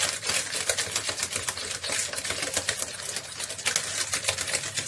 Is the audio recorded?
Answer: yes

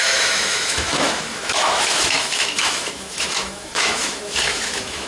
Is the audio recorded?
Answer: no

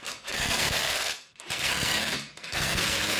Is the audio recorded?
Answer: no